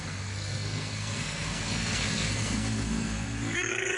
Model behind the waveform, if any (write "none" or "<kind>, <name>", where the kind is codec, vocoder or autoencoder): codec, SNAC